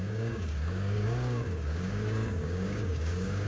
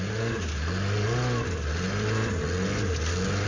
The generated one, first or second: first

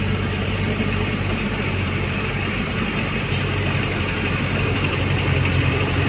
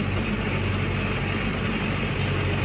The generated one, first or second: first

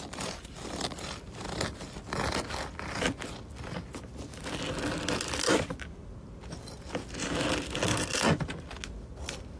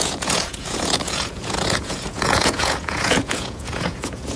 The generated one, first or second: second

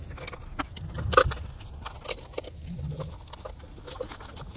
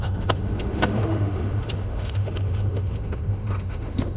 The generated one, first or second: second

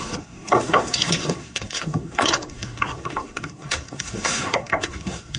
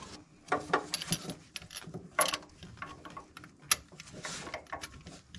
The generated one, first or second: first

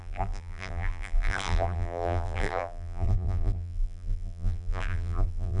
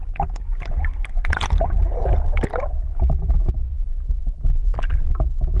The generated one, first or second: first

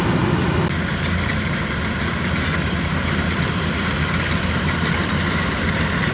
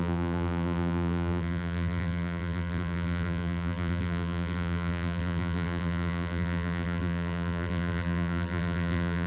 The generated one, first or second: second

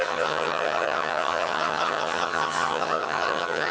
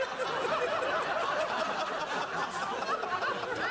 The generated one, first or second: first